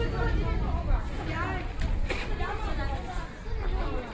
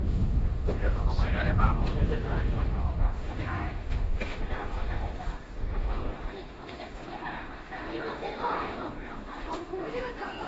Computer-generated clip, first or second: second